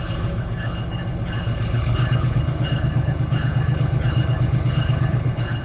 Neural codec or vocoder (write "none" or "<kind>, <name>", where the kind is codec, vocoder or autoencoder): codec, HILCodec